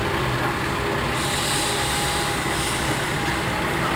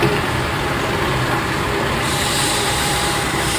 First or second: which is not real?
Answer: second